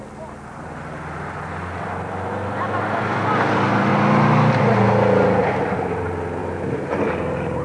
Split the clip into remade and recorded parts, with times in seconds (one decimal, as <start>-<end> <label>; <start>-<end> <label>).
0.0-6.4 recorded; 6.4-7.6 remade

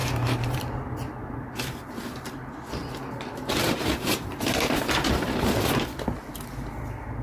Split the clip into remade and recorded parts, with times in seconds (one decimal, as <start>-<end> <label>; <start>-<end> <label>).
0.0-0.6 remade; 0.6-2.8 recorded; 2.8-5.7 remade; 5.7-7.2 recorded

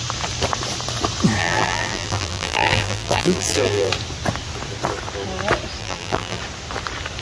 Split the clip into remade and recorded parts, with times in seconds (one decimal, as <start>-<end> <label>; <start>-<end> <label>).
0.0-1.4 recorded; 1.4-3.9 remade; 3.9-5.8 recorded; 5.8-6.4 remade; 6.4-7.2 recorded

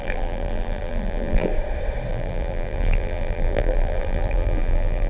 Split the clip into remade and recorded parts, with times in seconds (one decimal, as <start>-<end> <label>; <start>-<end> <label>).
0.0-1.5 remade; 1.5-2.1 recorded; 2.1-5.1 remade

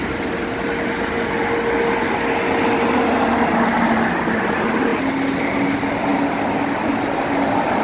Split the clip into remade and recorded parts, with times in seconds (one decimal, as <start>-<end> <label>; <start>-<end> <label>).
0.0-7.8 recorded

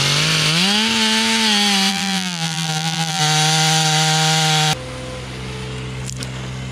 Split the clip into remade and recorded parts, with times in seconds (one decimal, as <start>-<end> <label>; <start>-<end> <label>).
0.0-1.9 recorded; 1.9-3.2 remade; 3.2-6.7 recorded

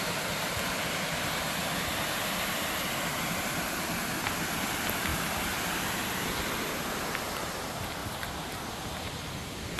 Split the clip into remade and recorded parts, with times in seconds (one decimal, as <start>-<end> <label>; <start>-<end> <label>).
0.0-5.1 recorded; 5.1-7.4 remade; 7.4-8.0 recorded; 8.0-8.7 remade; 8.7-9.8 recorded